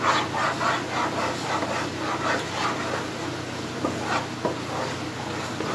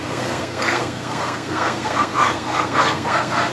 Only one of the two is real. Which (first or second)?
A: first